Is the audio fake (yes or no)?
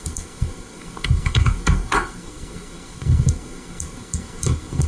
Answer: yes